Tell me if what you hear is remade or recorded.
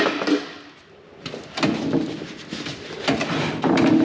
recorded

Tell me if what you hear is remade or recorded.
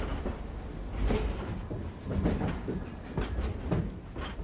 recorded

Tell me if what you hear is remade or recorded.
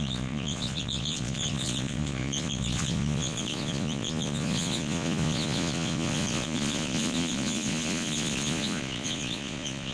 remade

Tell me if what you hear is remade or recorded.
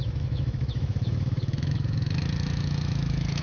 remade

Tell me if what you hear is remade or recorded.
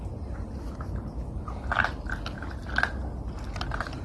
recorded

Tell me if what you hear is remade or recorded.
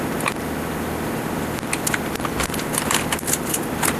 recorded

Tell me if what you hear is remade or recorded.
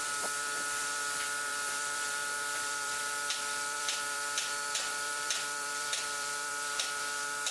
remade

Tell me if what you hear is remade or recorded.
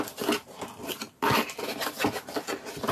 recorded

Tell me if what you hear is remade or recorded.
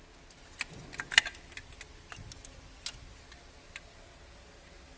recorded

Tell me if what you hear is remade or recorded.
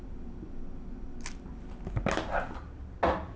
recorded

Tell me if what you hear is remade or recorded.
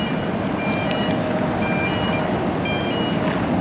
recorded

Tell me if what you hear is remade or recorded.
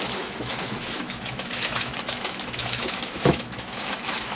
remade